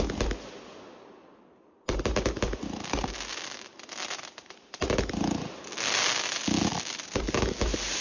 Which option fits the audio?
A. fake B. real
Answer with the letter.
B